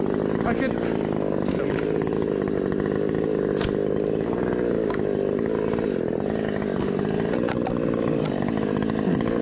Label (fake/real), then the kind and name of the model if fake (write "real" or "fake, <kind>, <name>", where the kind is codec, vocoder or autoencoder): real